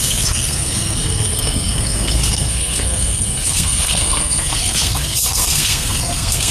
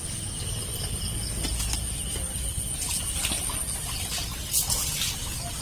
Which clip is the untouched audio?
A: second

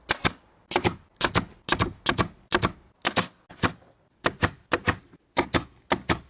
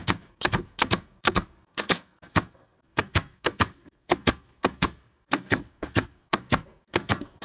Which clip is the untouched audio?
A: first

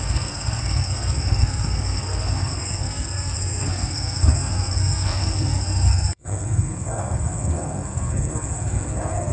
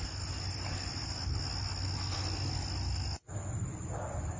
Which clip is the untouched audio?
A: second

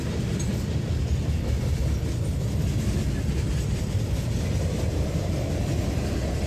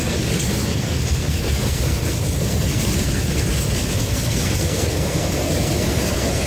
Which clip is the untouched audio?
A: first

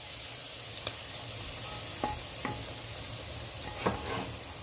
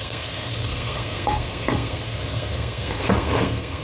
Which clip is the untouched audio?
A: first